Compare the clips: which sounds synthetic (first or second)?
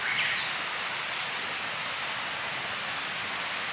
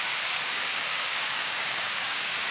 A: second